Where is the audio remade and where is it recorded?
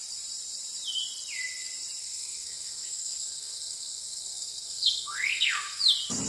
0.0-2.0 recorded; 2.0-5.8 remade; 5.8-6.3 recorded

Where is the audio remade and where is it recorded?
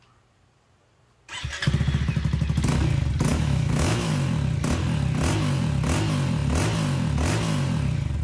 0.0-3.3 recorded; 3.3-4.1 remade; 4.1-8.2 recorded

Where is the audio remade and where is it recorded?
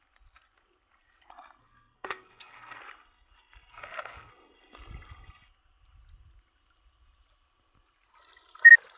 0.0-1.6 recorded; 1.6-2.8 remade; 2.8-3.7 recorded; 3.7-4.3 remade; 4.3-9.0 recorded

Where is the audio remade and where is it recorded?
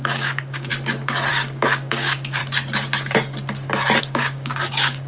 0.0-0.7 remade; 0.7-1.3 recorded; 1.3-2.4 remade; 2.4-4.0 recorded; 4.0-5.1 remade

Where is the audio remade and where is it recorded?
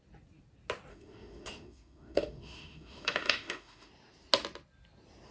0.0-0.9 recorded; 0.9-3.9 remade; 3.9-5.3 recorded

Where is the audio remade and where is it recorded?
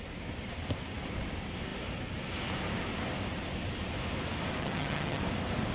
0.0-4.6 recorded; 4.6-5.2 remade; 5.2-5.7 recorded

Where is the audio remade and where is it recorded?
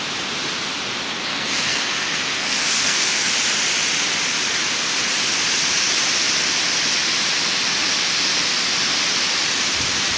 0.0-1.3 recorded; 1.3-3.3 remade; 3.3-10.2 recorded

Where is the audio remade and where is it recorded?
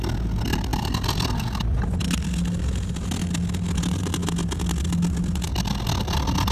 0.0-6.5 recorded